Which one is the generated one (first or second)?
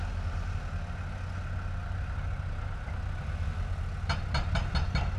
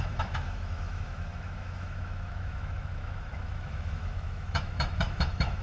second